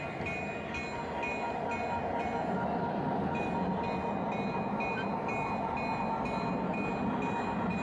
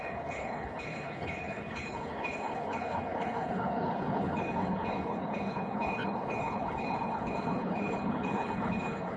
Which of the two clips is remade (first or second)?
second